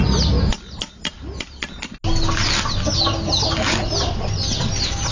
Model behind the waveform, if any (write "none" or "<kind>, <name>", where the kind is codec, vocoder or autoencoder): none